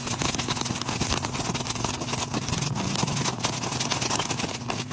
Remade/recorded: recorded